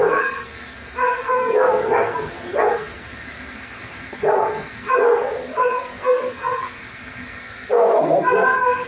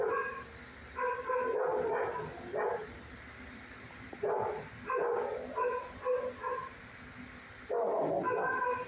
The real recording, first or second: second